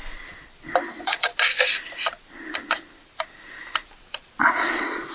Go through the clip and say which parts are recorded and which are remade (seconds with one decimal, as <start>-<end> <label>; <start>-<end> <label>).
0.0-0.8 recorded; 0.8-1.3 remade; 1.3-4.4 recorded; 4.4-5.1 remade